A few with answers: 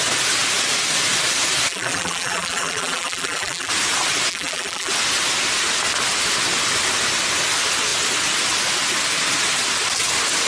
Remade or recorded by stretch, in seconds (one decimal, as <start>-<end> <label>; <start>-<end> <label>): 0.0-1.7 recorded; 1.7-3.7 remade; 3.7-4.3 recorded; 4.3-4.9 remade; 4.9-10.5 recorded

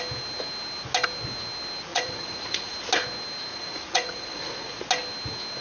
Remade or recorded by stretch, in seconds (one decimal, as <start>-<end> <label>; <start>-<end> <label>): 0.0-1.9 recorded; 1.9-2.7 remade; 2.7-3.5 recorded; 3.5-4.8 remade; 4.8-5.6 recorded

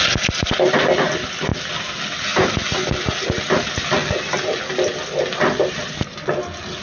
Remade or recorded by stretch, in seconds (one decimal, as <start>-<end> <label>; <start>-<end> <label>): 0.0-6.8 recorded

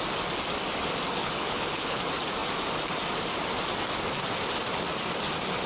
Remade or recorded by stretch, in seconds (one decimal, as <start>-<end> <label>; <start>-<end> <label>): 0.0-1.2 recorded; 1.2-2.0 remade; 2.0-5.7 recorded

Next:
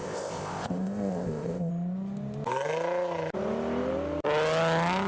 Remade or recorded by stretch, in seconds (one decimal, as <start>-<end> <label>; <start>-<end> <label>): 0.0-1.7 remade; 1.7-5.1 recorded